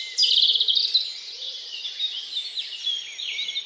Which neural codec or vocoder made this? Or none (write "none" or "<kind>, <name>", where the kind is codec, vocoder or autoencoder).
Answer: none